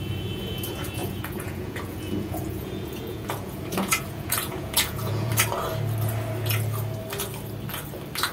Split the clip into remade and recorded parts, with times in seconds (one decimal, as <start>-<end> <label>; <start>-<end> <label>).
0.0-5.3 remade; 5.3-8.3 recorded